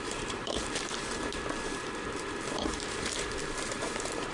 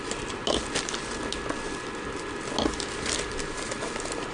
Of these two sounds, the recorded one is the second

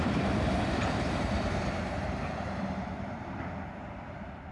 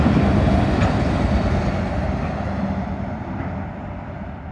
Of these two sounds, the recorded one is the second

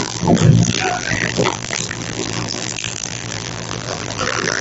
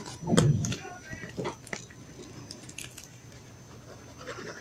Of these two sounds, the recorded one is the second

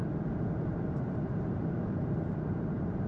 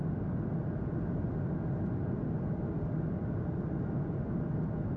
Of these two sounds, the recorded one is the second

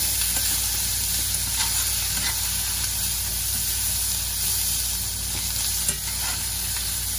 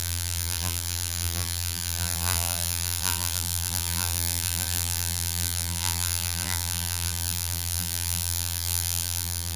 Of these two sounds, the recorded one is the first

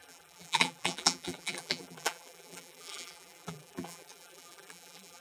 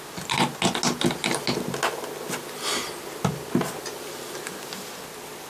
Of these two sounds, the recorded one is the second